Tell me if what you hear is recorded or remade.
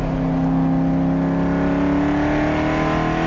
recorded